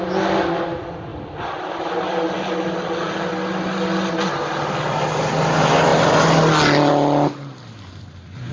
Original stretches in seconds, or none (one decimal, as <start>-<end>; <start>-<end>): 0.0-8.5